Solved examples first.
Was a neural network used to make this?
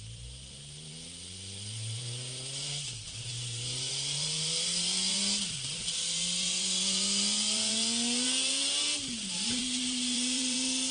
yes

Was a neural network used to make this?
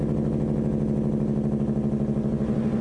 no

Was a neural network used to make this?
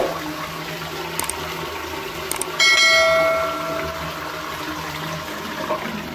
no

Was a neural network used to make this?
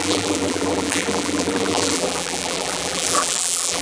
yes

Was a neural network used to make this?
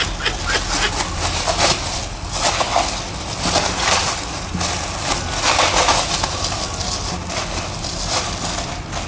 no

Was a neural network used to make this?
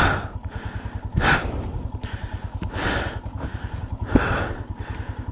no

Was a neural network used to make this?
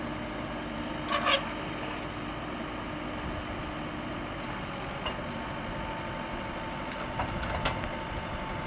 no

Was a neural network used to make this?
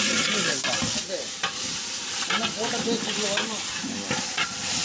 yes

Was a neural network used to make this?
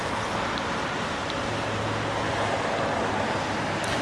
no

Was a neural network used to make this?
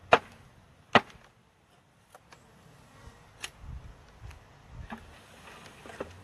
no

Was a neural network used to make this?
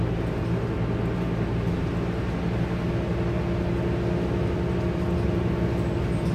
no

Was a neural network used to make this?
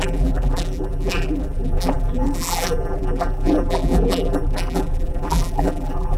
yes